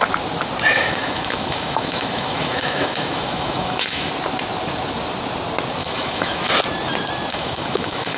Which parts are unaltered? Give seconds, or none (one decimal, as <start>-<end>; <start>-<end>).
0.0-0.7; 4.1-5.8; 6.5-7.3

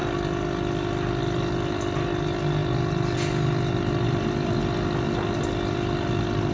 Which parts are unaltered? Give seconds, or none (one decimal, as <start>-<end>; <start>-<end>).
0.0-6.5